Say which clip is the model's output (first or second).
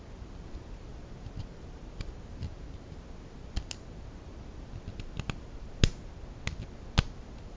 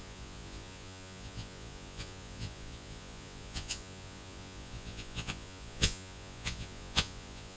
second